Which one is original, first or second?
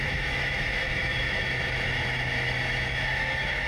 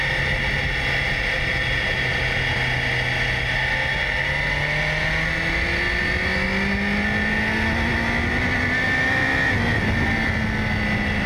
second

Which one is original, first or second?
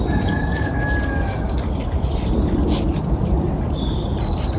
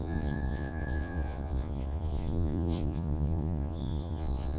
first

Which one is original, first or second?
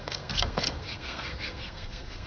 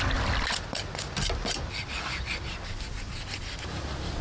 second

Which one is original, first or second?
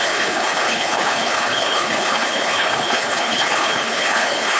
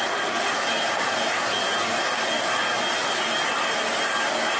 second